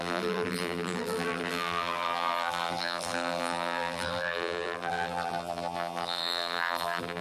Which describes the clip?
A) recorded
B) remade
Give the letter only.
B